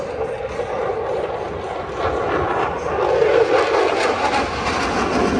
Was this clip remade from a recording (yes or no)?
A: no